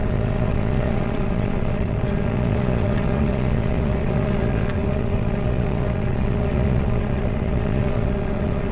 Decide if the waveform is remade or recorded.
remade